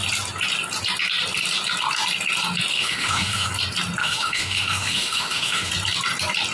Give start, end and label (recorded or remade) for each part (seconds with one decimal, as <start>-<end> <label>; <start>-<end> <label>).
0.0-2.7 recorded; 2.7-3.5 remade; 3.5-4.0 recorded; 4.0-5.7 remade; 5.7-6.5 recorded